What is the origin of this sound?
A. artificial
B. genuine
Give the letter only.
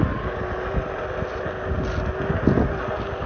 B